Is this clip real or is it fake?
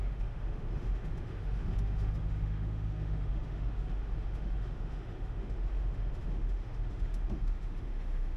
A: fake